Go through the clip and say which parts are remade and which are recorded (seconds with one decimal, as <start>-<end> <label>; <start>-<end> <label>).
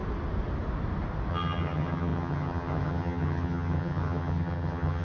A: 0.0-1.3 recorded; 1.3-5.0 remade